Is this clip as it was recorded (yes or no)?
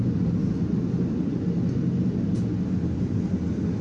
yes